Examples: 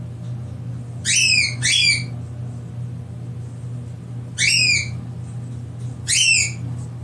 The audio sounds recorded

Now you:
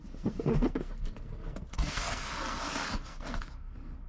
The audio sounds remade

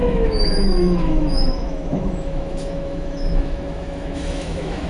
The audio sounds remade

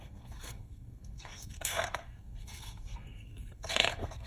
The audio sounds remade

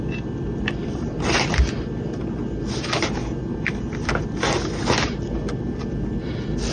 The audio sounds recorded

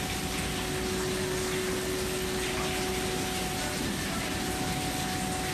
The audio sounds recorded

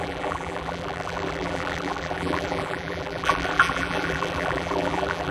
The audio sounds remade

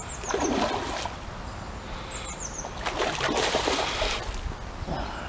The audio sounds recorded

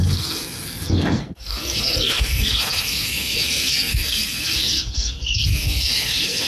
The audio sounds remade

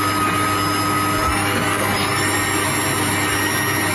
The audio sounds recorded